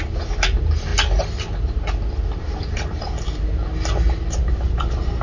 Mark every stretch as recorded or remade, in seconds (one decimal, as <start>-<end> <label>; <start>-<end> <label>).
0.0-5.2 recorded